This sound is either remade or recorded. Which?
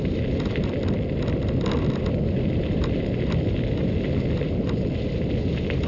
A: recorded